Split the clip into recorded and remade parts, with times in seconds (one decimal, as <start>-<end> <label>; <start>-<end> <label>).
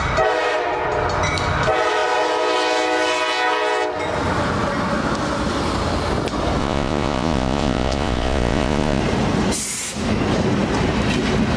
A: 0.0-6.6 recorded; 6.6-9.0 remade; 9.0-11.6 recorded